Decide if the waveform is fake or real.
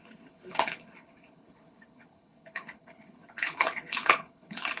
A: fake